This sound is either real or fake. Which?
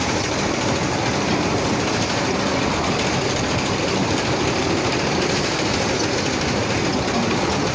fake